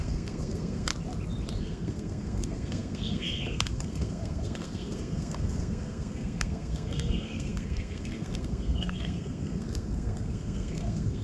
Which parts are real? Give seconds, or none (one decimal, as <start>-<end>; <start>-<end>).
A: 0.9-1.6